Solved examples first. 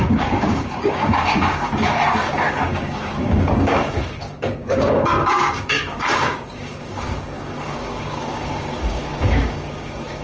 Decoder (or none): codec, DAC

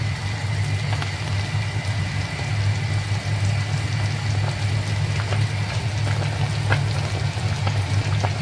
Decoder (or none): none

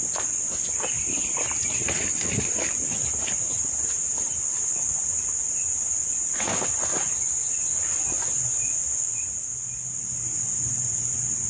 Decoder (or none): none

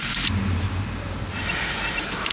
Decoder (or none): none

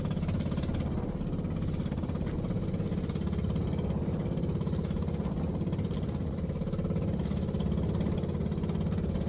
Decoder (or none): none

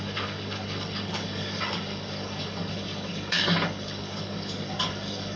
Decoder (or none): codec, DAC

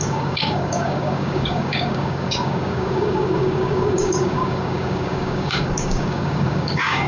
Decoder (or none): codec, DAC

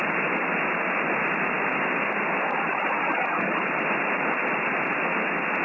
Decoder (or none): none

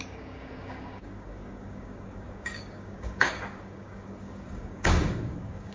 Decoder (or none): codec, DAC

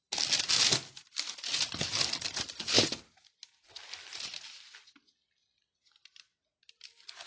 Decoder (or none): none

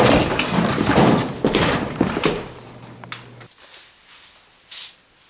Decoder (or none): none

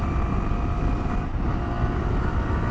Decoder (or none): none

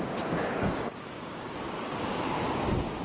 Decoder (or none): codec, DAC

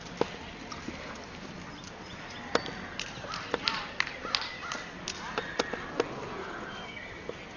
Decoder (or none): none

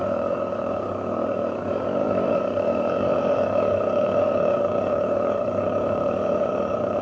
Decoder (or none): codec, DAC